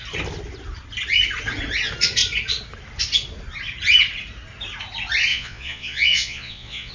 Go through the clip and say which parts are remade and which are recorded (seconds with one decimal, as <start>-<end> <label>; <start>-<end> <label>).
0.0-5.3 recorded; 5.3-6.9 remade